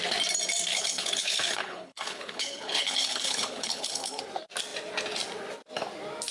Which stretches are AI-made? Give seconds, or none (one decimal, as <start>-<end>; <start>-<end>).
0.7-4.2

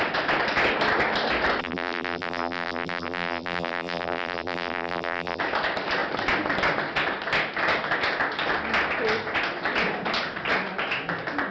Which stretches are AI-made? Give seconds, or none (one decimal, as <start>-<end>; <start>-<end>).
1.6-5.4